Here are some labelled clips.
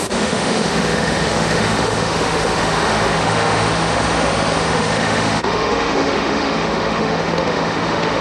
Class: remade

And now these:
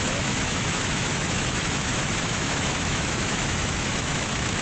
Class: remade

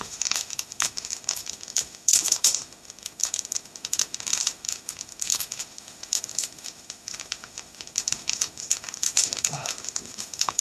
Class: remade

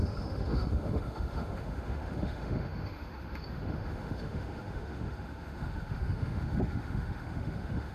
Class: remade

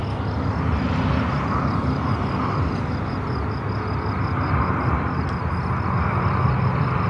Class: recorded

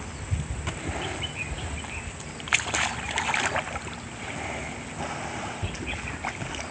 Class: recorded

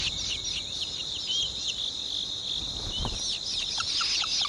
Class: recorded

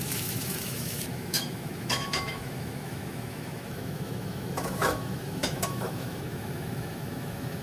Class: remade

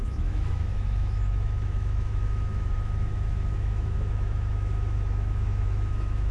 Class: remade